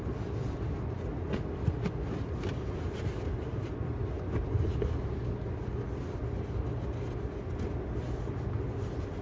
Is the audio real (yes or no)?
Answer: yes